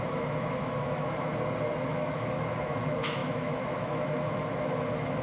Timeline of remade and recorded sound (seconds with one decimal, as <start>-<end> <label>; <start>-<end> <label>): 0.0-1.3 remade; 1.3-1.9 recorded; 1.9-5.2 remade